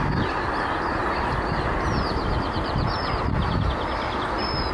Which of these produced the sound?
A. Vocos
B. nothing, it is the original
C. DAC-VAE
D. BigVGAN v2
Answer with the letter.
B